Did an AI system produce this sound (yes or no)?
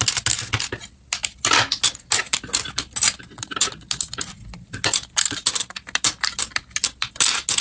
no